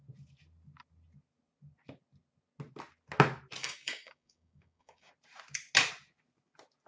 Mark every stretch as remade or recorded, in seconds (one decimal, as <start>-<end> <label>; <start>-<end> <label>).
0.0-3.6 recorded; 3.6-5.1 remade; 5.1-6.9 recorded